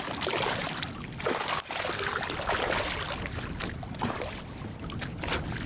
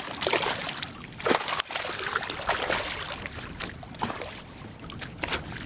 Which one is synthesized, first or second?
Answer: second